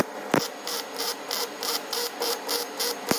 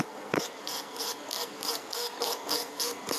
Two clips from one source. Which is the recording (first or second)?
first